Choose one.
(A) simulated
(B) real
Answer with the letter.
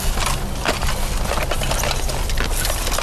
B